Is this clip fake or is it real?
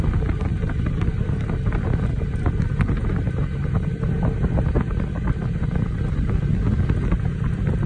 real